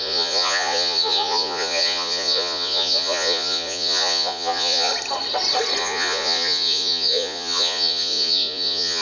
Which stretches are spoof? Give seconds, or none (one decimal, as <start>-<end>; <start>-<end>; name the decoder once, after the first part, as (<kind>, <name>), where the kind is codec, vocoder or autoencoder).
0.0-4.9 (vocoder, Vocos); 5.8-9.0